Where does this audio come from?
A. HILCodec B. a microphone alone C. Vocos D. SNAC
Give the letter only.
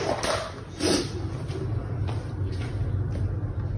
B